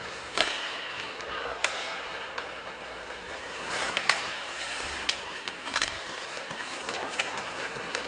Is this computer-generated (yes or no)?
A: yes